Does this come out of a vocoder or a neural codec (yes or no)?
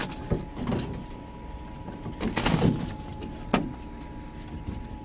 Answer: no